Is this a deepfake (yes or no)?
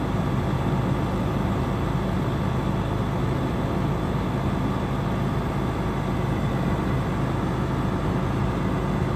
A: no